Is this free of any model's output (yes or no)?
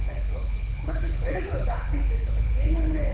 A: no